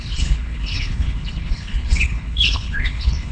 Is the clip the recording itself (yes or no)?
no